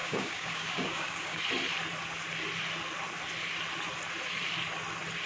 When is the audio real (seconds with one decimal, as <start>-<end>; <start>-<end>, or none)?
1.4-5.3